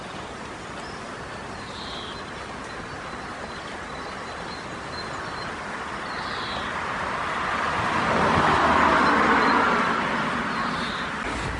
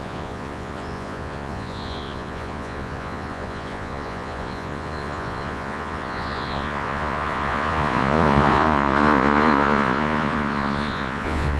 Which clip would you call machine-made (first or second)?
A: second